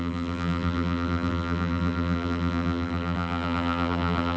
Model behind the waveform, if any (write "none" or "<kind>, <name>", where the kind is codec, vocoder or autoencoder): vocoder, BigVGAN v2